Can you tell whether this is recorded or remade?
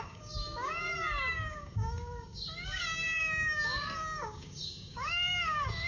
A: remade